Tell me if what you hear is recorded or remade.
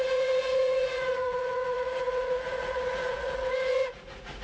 remade